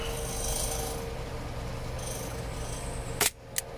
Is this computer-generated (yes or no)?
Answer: no